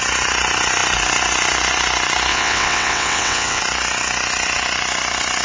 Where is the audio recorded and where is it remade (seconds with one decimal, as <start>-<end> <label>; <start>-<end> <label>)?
0.0-2.3 recorded; 2.3-3.6 remade; 3.6-5.4 recorded